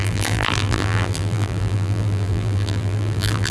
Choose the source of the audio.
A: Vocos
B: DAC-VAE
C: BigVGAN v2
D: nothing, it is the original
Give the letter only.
C